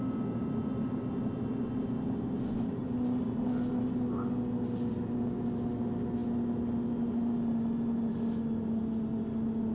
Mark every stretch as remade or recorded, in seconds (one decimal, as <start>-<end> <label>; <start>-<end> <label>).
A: 0.0-9.7 recorded